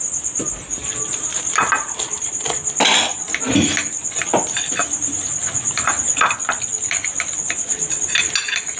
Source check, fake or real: real